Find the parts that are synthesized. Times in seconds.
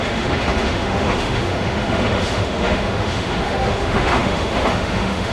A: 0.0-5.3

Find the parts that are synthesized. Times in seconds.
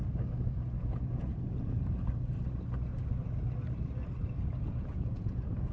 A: 0.8-1.3; 4.6-5.7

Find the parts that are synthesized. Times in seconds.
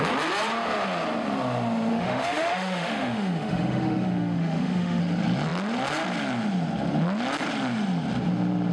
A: 1.9-5.0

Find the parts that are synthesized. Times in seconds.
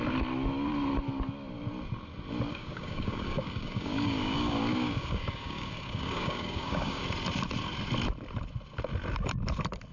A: 2.5-7.0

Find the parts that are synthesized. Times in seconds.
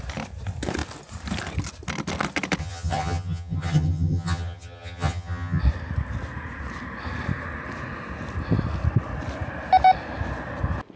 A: 2.6-5.6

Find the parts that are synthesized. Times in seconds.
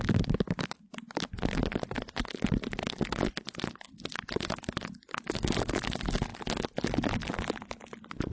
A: none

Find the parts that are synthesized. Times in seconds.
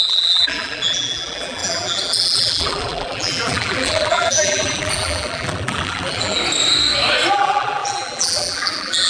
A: 0.0-6.4; 7.3-9.1